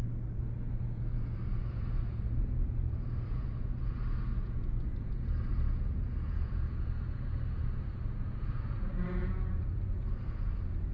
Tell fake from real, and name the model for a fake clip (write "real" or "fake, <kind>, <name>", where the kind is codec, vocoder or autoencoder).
fake, vocoder, Vocos